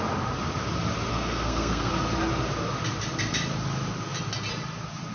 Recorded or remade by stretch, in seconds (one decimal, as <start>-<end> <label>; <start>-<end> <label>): 0.0-1.1 recorded; 1.1-1.9 remade; 1.9-5.1 recorded